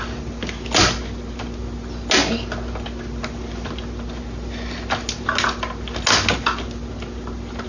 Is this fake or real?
real